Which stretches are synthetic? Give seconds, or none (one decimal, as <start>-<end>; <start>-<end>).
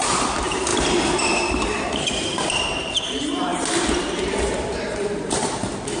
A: 0.0-6.0